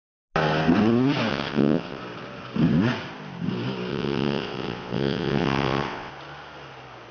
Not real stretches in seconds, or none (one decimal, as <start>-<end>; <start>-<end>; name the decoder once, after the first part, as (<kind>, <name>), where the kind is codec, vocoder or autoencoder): 1.3-2.0 (vocoder, WaveNeXt); 3.9-6.1